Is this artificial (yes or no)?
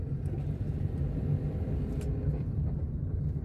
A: yes